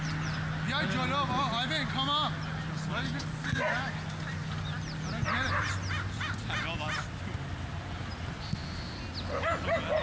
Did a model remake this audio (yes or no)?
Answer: no